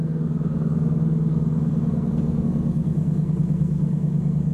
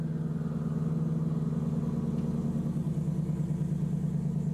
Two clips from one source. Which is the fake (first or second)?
first